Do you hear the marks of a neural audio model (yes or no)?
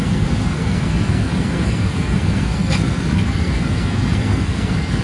yes